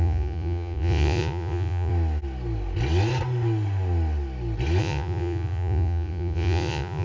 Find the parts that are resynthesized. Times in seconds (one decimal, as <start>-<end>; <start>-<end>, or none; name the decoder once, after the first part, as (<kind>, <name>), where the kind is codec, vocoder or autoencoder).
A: 0.0-1.9 (vocoder, Vocos); 4.8-7.0